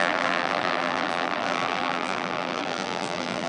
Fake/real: fake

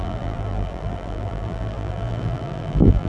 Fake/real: fake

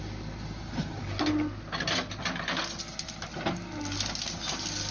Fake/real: real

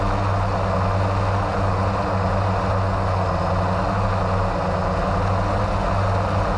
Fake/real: real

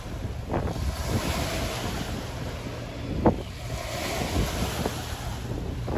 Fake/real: real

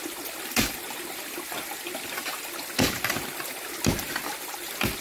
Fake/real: fake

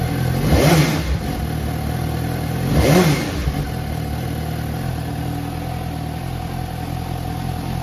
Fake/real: real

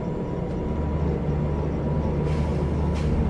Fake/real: real